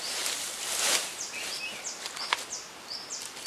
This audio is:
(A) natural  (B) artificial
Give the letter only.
A